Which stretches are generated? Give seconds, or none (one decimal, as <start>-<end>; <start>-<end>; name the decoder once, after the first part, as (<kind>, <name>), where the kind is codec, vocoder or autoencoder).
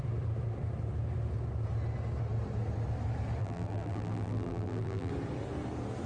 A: 3.4-5.1 (vocoder, BigVGAN v2)